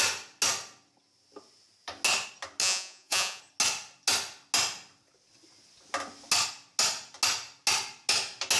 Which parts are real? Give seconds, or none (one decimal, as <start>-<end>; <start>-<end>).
0.0-2.6; 3.4-8.6